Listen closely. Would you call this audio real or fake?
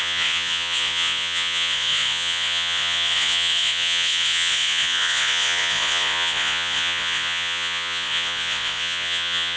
fake